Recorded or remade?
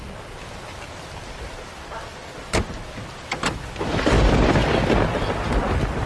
remade